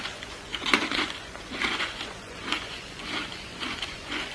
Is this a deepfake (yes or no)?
yes